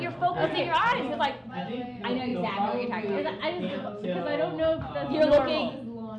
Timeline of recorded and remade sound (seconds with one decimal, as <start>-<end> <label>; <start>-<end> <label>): 0.0-6.2 recorded